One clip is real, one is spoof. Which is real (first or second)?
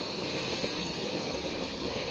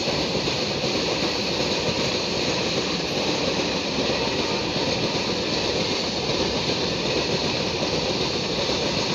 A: second